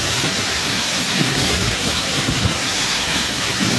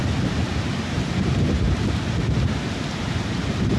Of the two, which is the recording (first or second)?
second